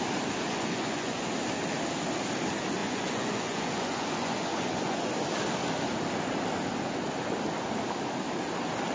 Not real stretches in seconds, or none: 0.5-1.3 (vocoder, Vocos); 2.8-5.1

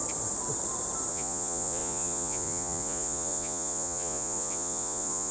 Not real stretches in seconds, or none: 1.1-5.3 (vocoder, Vocos)

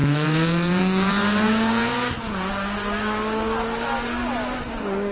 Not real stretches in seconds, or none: 0.0-2.5 (vocoder, Vocos)

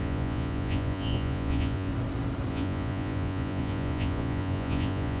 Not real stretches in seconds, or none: 0.0-1.9 (vocoder, Vocos); 2.5-5.2

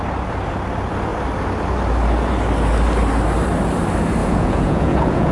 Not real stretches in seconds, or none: 4.2-5.3 (vocoder, Vocos)

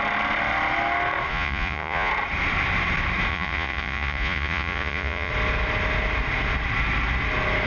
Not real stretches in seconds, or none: 1.3-2.1 (vocoder, Vocos); 3.3-5.3